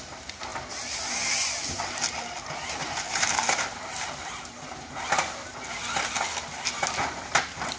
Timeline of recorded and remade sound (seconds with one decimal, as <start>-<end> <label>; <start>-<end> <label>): 0.0-7.8 recorded